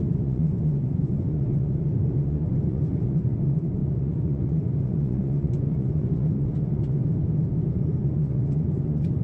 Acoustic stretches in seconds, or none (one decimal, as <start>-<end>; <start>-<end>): 7.0-7.7